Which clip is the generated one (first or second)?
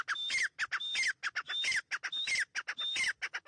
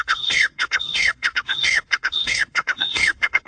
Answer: second